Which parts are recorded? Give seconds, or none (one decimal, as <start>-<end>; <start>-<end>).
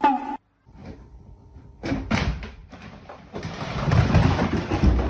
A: 0.0-0.8; 1.9-2.6; 3.8-5.1